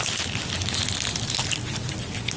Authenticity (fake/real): real